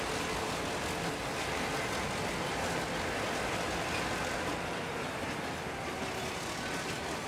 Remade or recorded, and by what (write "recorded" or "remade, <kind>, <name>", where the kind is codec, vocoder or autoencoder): recorded